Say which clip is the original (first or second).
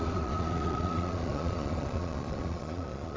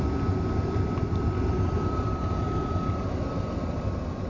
second